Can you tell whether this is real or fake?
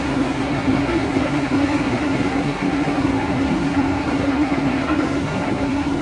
fake